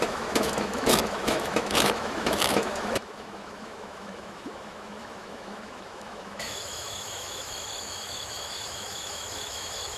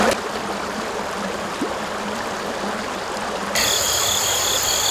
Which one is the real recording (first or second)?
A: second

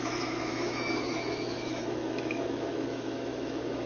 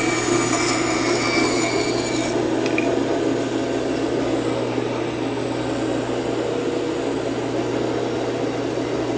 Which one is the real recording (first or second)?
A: second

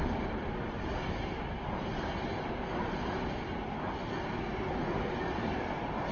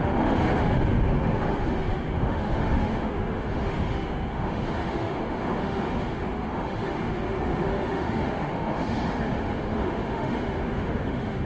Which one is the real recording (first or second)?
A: first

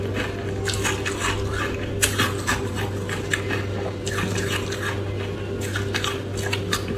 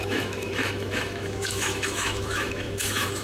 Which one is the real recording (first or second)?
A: first